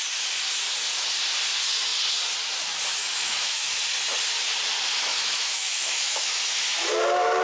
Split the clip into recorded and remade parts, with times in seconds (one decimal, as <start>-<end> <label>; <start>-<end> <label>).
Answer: 0.0-3.0 recorded; 3.0-3.8 remade; 3.8-5.1 recorded; 5.1-6.4 remade; 6.4-7.4 recorded